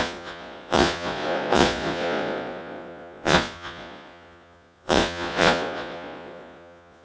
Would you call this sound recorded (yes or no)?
no